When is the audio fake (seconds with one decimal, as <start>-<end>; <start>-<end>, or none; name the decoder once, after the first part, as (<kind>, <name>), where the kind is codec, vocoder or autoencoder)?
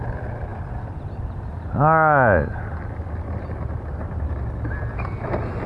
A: none